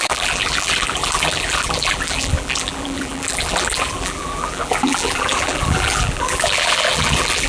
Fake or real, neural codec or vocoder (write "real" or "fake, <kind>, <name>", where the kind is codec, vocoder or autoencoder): fake, vocoder, BigVGAN v2